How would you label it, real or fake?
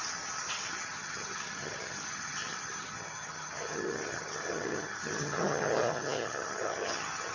fake